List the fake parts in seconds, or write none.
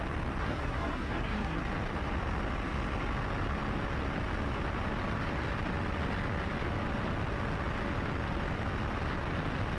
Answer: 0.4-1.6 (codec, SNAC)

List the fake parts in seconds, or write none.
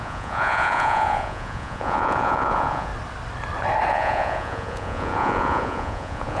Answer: 0.0-2.9 (vocoder, Vocos); 3.9-6.4